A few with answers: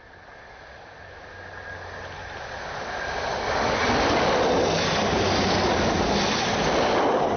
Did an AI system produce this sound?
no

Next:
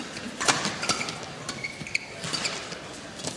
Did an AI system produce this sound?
no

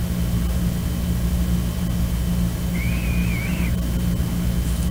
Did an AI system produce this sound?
no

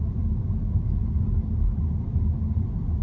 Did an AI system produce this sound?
no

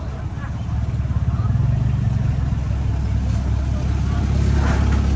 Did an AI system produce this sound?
no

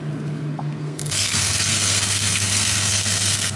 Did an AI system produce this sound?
yes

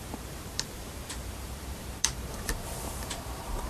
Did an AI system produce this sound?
yes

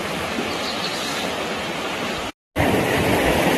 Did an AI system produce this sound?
no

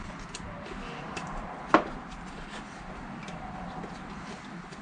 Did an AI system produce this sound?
no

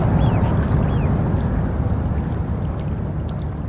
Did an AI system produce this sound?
no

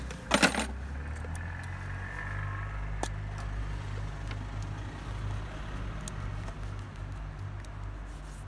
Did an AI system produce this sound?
no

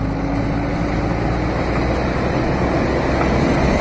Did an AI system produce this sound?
no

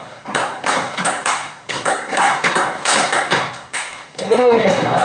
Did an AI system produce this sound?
yes